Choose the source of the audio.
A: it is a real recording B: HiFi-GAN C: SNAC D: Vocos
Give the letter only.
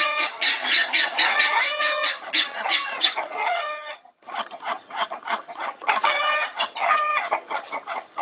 B